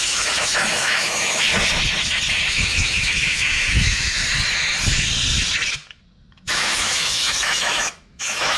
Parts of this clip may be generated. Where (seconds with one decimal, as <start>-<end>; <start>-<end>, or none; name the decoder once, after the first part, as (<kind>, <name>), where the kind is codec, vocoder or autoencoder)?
0.0-1.5 (autoencoder, DAC-VAE); 2.5-4.2; 6.3-8.6